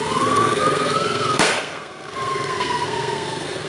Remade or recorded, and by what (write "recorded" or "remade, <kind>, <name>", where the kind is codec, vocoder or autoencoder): remade, codec, SNAC